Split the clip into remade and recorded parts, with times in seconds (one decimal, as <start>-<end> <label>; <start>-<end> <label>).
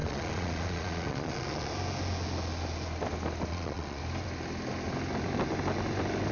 0.0-1.7 remade; 1.7-3.5 recorded; 3.5-4.0 remade; 4.0-6.3 recorded